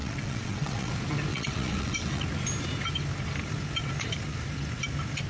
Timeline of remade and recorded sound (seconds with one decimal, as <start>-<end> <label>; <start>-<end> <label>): 0.0-0.9 remade; 0.9-1.3 recorded; 1.3-2.2 remade; 2.2-5.3 recorded